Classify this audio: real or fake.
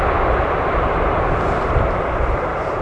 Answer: fake